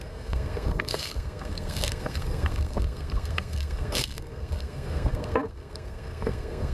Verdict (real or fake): fake